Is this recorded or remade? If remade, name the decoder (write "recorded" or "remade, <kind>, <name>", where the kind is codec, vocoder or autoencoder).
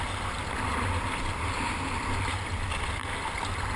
recorded